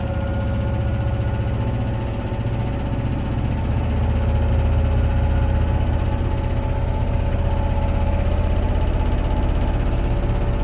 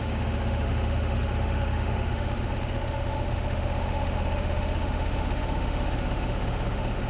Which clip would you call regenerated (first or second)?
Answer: second